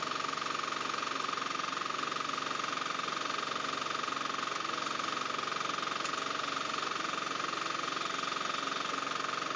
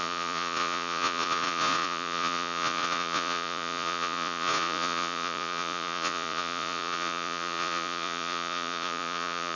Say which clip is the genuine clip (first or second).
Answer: first